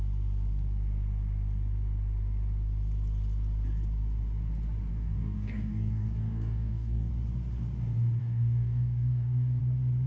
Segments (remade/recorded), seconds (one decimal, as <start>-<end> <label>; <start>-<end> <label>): 0.0-4.9 recorded; 4.9-7.1 remade; 7.1-8.2 recorded; 8.2-9.6 remade; 9.6-10.1 recorded